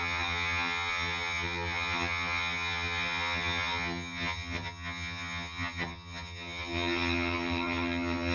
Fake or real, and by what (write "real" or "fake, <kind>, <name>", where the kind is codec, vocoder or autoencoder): fake, vocoder, HiFi-GAN